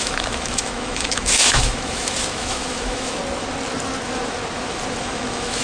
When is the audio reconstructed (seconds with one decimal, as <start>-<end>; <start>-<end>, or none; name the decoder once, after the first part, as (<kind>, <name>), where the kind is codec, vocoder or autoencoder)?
0.0-3.2 (autoencoder, DAC-VAE); 5.0-5.6